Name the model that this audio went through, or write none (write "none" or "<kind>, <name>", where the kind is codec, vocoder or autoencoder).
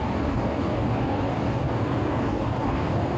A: codec, DAC